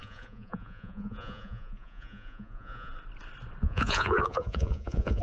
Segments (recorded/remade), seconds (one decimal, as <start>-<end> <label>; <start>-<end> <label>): 0.0-2.9 remade; 2.9-3.6 recorded; 3.6-5.2 remade